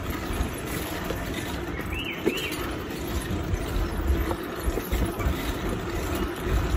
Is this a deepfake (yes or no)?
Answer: no